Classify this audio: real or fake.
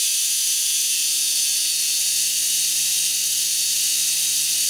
real